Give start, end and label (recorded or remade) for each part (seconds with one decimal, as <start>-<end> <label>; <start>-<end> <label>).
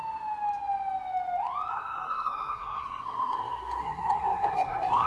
0.0-1.7 recorded; 1.7-5.1 remade